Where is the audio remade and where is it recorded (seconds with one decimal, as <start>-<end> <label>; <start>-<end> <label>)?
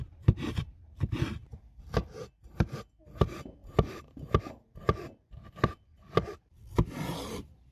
0.0-1.5 remade; 1.5-3.0 recorded; 3.0-7.7 remade